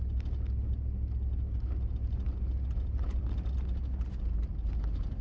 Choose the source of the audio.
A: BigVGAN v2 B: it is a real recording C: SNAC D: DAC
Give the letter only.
B